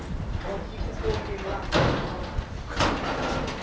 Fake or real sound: real